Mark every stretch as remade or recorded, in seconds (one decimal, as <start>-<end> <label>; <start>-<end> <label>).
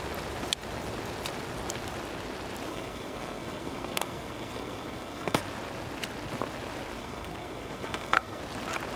0.0-2.7 recorded; 2.7-5.4 remade; 5.4-7.0 recorded; 7.0-8.4 remade; 8.4-9.0 recorded